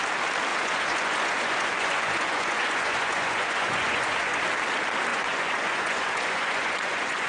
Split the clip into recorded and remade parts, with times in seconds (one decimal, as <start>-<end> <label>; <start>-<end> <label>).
0.0-0.5 recorded; 0.5-4.4 remade; 4.4-5.1 recorded; 5.1-7.3 remade